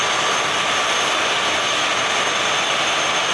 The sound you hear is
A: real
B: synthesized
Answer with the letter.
A